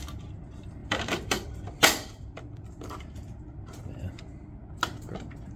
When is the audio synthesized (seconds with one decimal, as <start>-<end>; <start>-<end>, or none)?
0.8-4.2